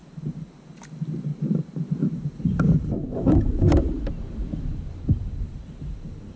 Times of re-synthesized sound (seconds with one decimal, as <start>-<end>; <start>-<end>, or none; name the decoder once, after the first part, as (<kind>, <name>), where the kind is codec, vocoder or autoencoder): 1.3-4.1 (vocoder, BigVGAN v2)